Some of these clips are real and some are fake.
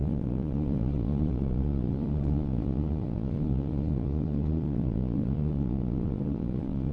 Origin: fake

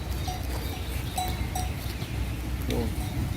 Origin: real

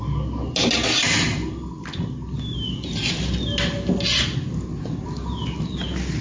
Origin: real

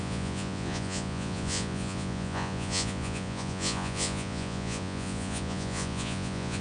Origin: fake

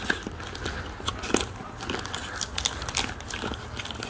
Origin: real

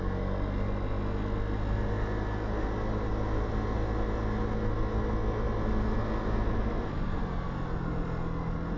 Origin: real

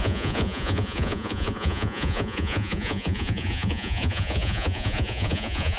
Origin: fake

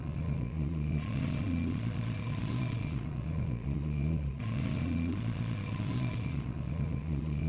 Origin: fake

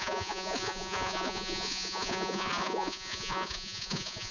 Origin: fake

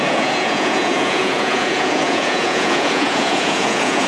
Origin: fake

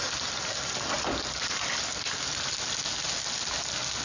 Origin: real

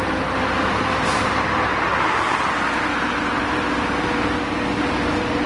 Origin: real